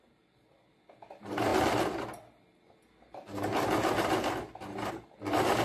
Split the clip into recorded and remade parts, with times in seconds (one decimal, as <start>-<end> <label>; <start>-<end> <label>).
0.0-5.6 recorded